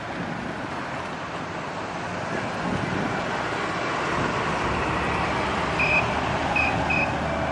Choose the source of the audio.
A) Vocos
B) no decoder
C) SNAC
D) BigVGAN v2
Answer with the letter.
B